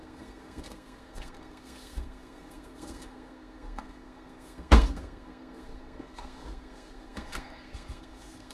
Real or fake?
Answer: fake